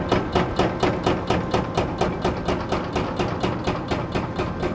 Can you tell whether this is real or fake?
real